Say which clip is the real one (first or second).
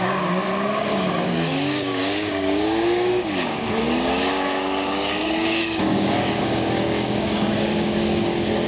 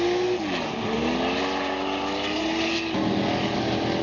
second